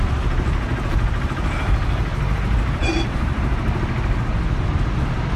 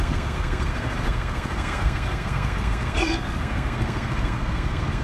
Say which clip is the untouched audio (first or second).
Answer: first